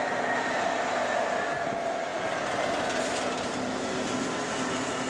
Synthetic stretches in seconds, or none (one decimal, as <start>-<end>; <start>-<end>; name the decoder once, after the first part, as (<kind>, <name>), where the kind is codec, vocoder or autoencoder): none